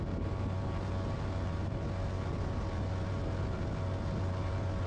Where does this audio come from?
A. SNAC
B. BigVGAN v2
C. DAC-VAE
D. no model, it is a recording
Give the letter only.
D